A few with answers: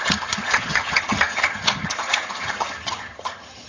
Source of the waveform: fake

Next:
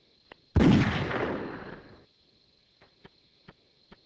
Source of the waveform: real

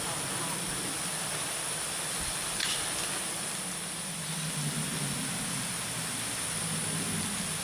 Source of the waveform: real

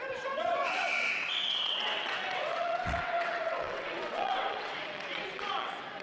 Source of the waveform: fake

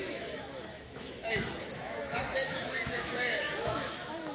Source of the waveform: fake